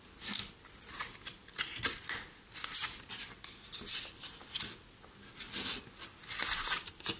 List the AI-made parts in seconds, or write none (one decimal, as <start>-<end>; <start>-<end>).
1.4-2.5